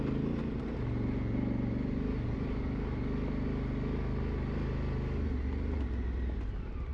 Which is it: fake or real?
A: real